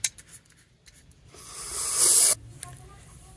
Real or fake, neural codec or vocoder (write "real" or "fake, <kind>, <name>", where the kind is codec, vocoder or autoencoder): real